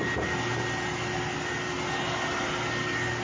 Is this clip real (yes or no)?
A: yes